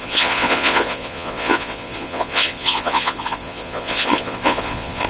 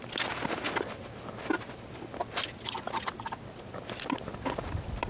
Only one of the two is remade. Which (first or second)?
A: first